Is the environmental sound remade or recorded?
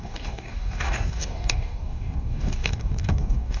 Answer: remade